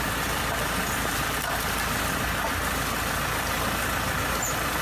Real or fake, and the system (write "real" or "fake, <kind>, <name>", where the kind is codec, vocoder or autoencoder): real